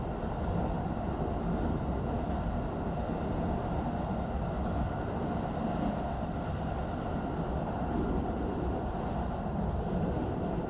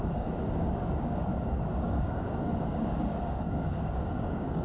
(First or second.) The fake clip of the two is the second